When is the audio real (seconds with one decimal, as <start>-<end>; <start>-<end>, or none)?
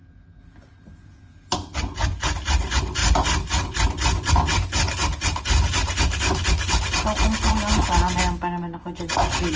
0.0-9.6